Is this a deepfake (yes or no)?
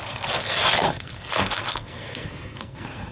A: yes